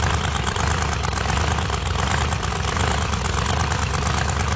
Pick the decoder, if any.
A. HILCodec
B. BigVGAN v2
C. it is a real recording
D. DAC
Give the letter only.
B